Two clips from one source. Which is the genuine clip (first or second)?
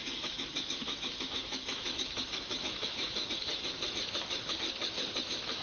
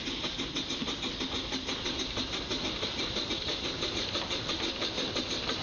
second